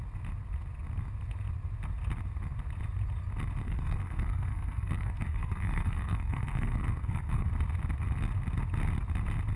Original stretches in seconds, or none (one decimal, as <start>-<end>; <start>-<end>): 0.0-3.6; 7.5-9.6